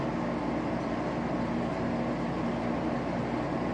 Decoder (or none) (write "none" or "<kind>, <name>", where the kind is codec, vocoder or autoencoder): none